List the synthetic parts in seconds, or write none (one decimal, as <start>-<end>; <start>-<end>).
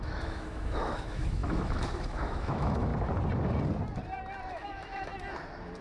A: 0.0-2.9; 4.5-5.1